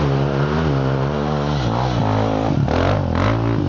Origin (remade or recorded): recorded